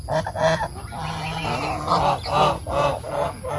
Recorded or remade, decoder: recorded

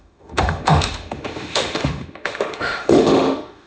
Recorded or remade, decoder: remade, autoencoder, DAC-VAE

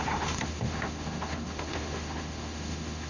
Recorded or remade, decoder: remade, autoencoder, DAC-VAE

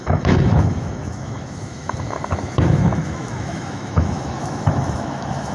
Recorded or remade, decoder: remade, autoencoder, DAC-VAE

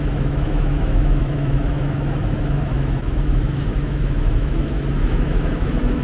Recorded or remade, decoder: remade, autoencoder, DAC-VAE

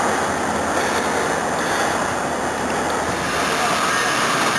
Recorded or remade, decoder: recorded